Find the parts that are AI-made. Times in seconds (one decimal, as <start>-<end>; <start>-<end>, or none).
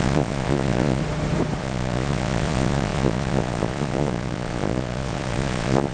0.0-1.0; 1.6-5.9